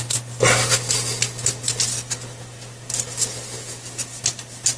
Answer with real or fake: real